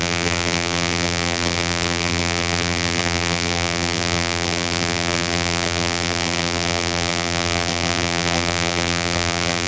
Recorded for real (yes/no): no